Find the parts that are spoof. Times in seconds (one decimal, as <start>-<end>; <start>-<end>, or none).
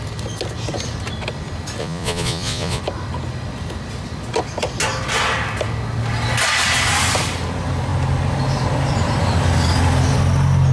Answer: 1.8-2.8